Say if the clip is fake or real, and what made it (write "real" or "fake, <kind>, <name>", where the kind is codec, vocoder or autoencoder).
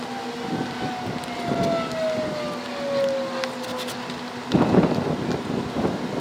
real